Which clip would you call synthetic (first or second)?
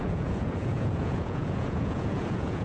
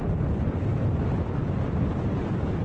first